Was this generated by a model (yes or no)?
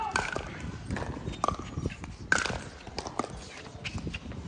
no